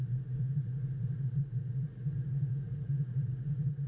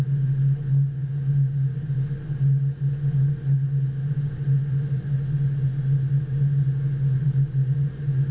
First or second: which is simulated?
first